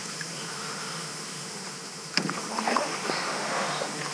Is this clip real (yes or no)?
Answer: no